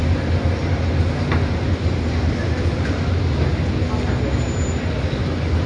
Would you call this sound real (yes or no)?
yes